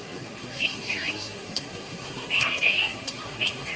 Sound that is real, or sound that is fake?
fake